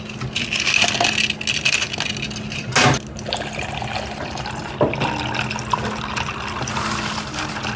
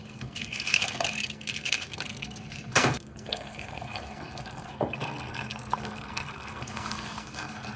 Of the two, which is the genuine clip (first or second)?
first